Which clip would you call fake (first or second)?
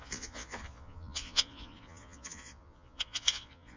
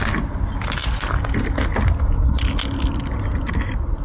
first